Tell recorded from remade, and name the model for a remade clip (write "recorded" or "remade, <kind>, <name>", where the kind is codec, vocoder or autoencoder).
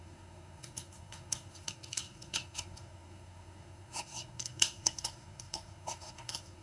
remade, codec, SNAC